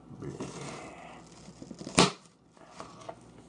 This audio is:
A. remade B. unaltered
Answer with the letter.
B